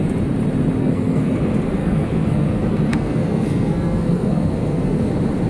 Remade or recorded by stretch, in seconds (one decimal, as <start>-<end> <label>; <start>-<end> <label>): 0.0-0.8 recorded; 0.8-1.4 remade; 1.4-1.8 recorded; 1.8-5.1 remade; 5.1-5.5 recorded